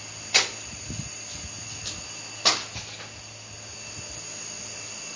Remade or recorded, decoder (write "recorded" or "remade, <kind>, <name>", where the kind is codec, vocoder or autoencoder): recorded